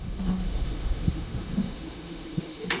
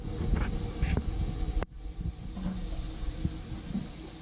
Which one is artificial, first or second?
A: first